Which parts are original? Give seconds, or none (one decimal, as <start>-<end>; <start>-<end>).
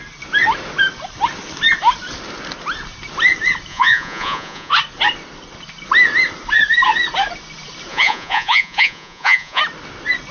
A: 0.0-3.7; 4.7-7.9; 9.6-10.3